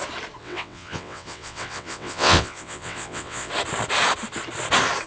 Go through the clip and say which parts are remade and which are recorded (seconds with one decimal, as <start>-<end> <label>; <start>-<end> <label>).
0.0-0.4 recorded; 0.4-3.5 remade; 3.5-5.1 recorded